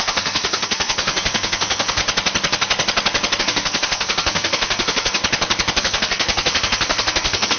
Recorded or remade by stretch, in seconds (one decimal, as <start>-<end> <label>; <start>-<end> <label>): 0.0-2.0 remade; 2.0-3.4 recorded; 3.4-5.2 remade; 5.2-5.8 recorded; 5.8-7.6 remade

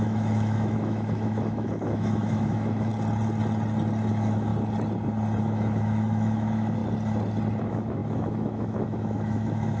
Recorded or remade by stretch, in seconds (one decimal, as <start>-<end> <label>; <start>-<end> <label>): 0.0-2.9 remade; 2.9-4.1 recorded; 4.1-4.5 remade; 4.5-5.4 recorded; 5.4-6.8 remade; 6.8-7.6 recorded; 7.6-9.8 remade

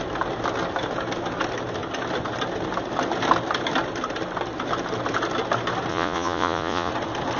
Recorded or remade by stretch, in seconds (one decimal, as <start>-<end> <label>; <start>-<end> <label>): 0.0-5.9 recorded; 5.9-6.9 remade; 6.9-7.4 recorded

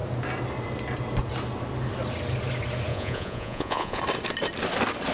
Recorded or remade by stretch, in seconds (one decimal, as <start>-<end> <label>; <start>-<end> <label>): 0.0-2.9 recorded; 2.9-4.0 remade; 4.0-5.1 recorded

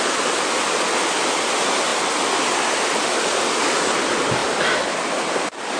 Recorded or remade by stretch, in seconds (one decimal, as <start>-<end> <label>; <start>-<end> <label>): 0.0-5.8 recorded